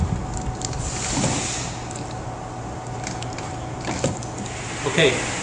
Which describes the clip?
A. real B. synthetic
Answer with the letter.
A